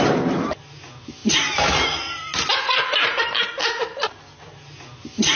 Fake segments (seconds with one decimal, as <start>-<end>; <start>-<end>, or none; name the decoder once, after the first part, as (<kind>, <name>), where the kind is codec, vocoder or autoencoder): none